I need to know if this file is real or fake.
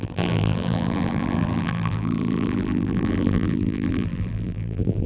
fake